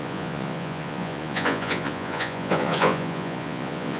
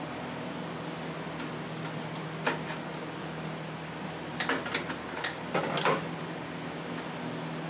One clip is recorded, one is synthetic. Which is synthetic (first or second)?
first